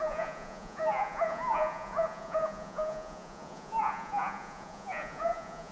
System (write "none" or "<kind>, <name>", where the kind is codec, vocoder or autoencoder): vocoder, Vocos